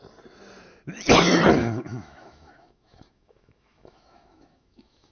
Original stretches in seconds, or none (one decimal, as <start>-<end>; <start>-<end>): 0.0-1.6